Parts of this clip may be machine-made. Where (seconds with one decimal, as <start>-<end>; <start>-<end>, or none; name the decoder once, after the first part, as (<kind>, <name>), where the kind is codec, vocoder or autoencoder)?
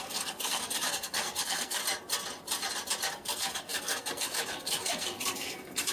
0.0-1.8 (codec, SNAC); 3.1-5.9